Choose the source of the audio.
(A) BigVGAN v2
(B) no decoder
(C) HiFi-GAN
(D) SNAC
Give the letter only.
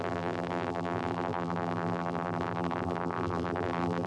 A